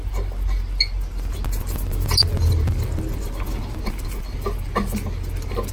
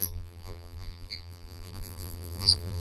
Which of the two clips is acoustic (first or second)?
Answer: first